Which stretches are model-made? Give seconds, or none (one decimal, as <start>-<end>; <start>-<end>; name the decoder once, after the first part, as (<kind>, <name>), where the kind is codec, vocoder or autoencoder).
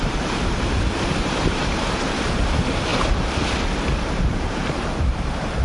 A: 0.0-2.9 (vocoder, BigVGAN v2); 3.9-5.6